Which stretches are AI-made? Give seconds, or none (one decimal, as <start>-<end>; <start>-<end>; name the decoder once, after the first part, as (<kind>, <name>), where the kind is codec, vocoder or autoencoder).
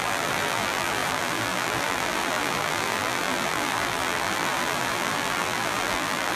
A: 0.0-6.4 (vocoder, BigVGAN v2)